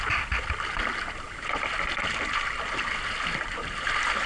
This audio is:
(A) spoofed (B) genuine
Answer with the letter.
B